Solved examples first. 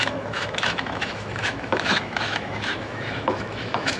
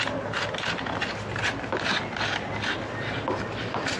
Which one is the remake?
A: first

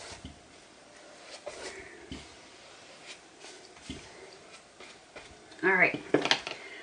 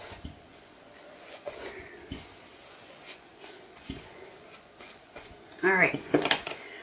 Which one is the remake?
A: second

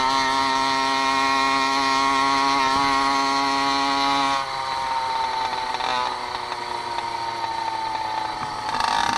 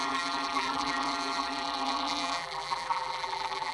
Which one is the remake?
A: second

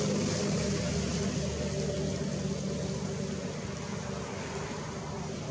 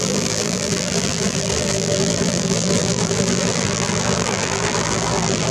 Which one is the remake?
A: second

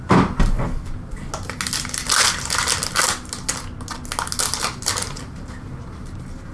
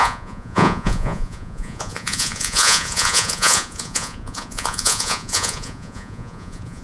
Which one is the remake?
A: second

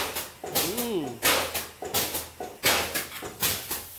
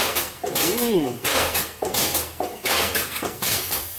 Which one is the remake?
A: second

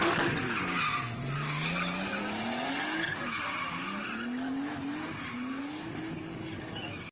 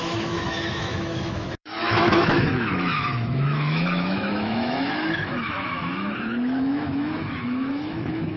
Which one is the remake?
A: second